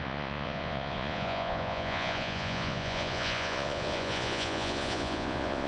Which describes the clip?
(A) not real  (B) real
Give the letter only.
A